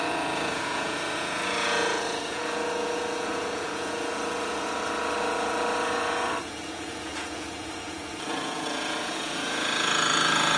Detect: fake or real fake